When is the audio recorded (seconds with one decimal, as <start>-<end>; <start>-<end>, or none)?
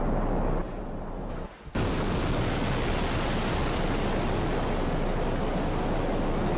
0.0-0.6; 1.6-6.6